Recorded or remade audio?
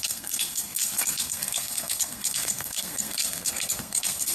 remade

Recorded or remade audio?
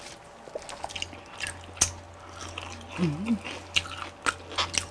recorded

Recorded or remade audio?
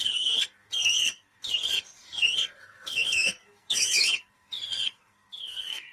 remade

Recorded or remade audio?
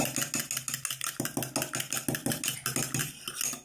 recorded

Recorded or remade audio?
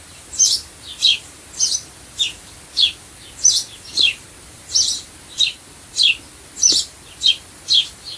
recorded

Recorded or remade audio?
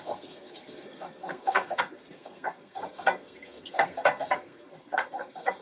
remade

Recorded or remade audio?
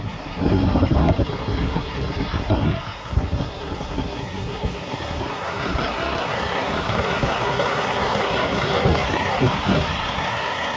remade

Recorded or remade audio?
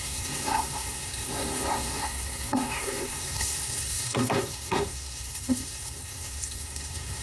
remade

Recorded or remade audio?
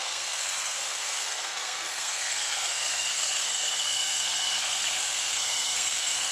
remade